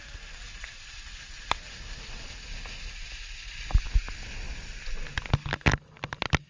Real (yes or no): yes